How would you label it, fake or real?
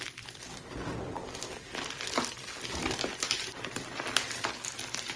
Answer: fake